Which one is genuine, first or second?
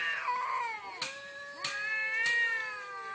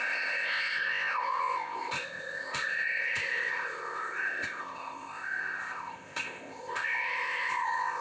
first